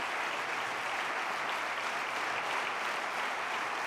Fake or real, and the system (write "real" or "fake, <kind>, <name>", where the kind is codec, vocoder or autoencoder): real